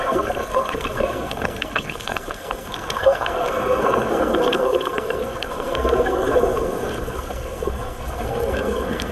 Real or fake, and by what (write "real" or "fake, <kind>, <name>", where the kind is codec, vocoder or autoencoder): fake, codec, SNAC